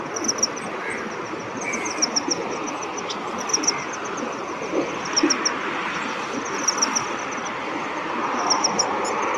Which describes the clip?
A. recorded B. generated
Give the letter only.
A